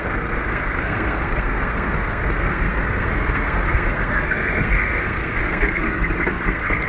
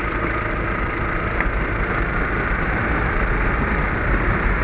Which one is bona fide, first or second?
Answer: second